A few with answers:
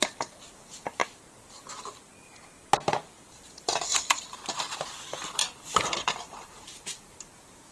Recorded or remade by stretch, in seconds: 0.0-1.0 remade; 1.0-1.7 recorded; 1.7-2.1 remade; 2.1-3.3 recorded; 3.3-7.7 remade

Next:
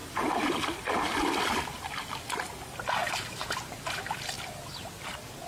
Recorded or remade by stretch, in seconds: 0.0-0.5 remade; 0.5-3.0 recorded; 3.0-3.7 remade; 3.7-5.5 recorded